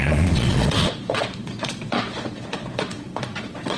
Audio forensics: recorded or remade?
remade